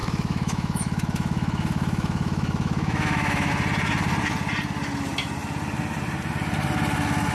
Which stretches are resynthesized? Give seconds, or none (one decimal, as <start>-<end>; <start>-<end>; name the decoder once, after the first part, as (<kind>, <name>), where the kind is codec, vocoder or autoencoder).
0.0-3.5 (autoencoder, DAC-VAE)